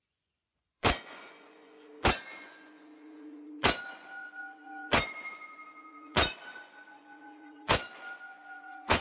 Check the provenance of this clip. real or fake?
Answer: fake